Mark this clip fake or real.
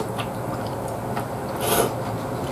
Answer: real